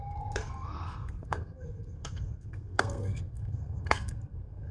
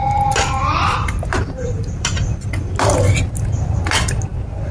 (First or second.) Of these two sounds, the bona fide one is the second